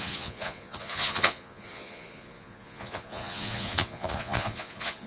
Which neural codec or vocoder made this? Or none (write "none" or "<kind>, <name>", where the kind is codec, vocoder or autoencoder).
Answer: vocoder, Vocos